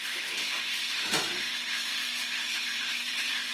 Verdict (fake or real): fake